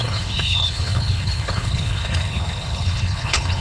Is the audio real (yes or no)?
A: no